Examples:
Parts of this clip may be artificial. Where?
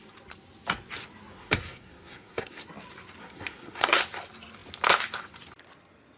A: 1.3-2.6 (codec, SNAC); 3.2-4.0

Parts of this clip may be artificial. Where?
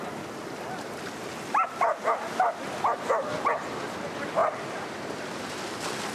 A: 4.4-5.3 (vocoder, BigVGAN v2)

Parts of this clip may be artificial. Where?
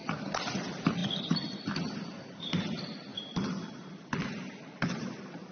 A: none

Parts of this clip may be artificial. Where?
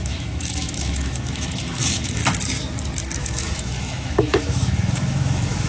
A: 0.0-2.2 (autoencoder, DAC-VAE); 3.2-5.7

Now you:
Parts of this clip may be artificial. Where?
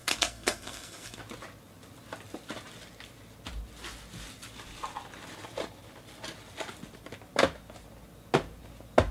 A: 0.0-1.2 (codec, SNAC)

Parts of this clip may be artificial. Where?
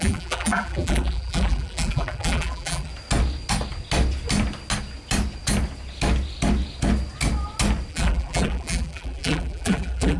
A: 0.0-2.9 (vocoder, BigVGAN v2); 7.9-10.2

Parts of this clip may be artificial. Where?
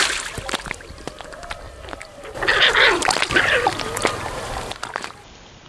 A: none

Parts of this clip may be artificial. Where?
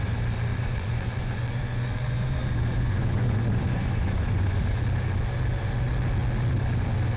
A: 0.5-4.8 (vocoder, Vocos)